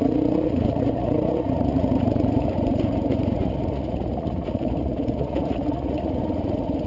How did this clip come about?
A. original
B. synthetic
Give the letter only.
B